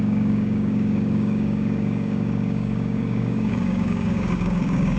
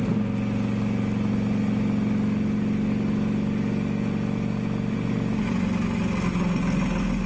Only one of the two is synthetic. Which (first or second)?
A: first